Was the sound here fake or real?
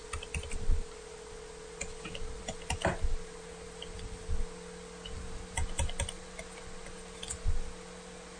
real